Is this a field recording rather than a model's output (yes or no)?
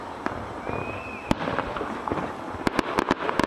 yes